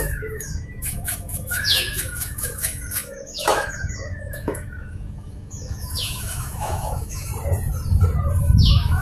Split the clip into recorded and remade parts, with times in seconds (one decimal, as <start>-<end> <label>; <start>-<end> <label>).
0.0-7.3 remade; 7.3-8.4 recorded; 8.4-9.0 remade